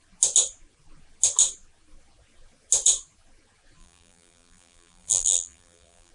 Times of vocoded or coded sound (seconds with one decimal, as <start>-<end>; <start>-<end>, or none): 3.8-6.1